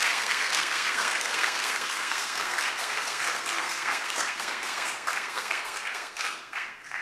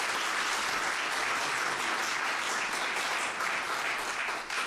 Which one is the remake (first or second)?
first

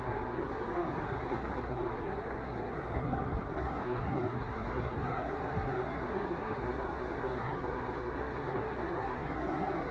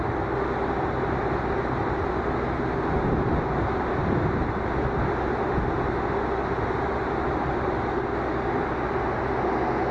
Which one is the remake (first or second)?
first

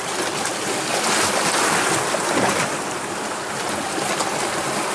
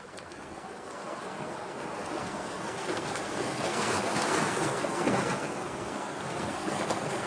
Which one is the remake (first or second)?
second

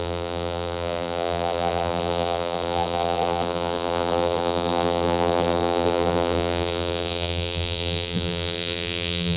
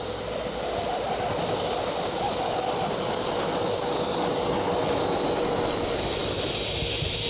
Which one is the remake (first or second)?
first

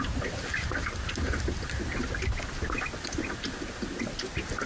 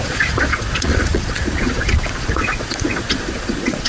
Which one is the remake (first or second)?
second